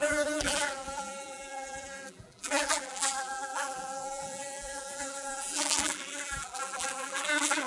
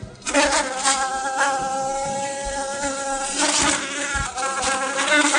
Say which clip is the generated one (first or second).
first